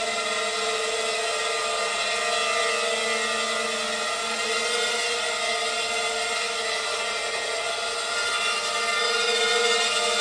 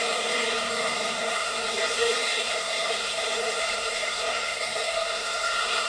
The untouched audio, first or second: first